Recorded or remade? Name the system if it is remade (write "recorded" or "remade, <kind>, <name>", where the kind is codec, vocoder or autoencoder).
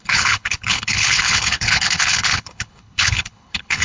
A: remade, codec, HILCodec